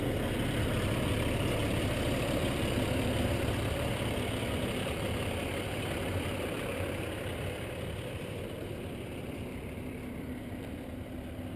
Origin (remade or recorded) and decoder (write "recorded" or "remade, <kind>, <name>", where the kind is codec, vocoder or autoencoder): remade, vocoder, BigVGAN v2